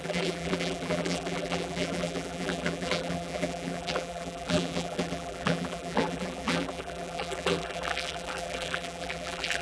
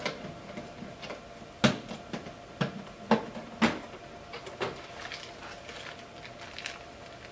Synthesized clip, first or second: first